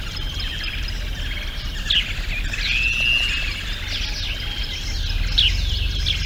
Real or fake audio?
real